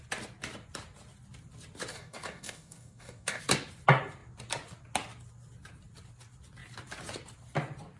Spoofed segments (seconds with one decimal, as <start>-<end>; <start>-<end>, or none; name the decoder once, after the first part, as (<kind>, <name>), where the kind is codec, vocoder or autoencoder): 1.9-3.4 (codec, DAC)